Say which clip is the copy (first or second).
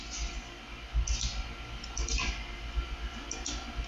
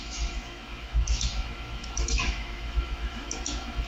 second